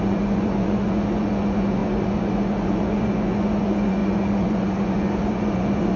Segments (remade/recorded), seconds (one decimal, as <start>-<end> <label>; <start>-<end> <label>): 0.0-6.0 remade